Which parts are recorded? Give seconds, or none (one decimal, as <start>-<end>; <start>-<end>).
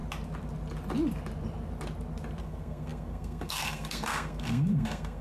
0.0-2.4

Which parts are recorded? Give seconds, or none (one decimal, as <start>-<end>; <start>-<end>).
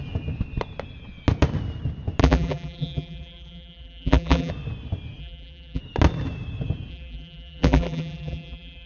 0.0-2.2; 4.5-5.2; 5.8-6.9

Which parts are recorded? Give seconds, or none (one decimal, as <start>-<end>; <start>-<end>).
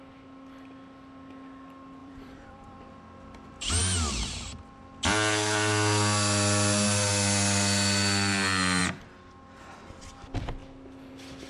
0.0-2.0; 2.9-11.5